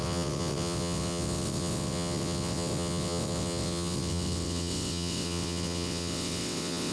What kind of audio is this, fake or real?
fake